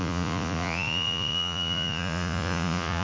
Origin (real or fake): fake